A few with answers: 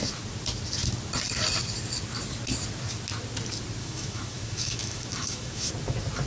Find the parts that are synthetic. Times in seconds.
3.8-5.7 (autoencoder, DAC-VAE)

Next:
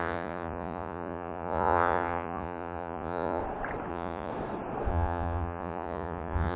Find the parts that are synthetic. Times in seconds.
0.0-3.4 (vocoder, Vocos); 3.9-4.3; 4.9-6.6

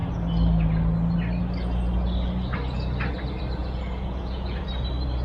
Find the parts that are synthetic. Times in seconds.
3.6-4.6 (vocoder, Vocos)

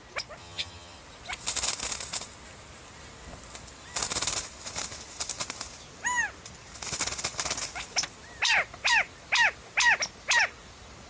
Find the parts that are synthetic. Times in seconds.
0.4-1.0 (vocoder, HiFi-GAN)

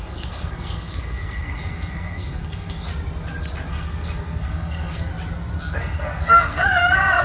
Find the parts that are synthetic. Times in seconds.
0.0-2.9 (codec, SNAC); 3.7-5.1; 5.6-7.2

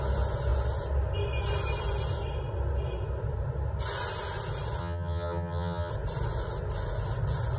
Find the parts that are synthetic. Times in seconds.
4.8-5.9 (vocoder, HiFi-GAN)